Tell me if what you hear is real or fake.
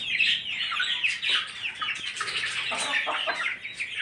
real